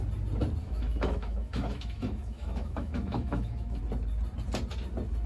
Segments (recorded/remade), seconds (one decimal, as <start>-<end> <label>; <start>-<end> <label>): 0.0-0.6 recorded; 0.6-3.8 remade; 3.8-5.3 recorded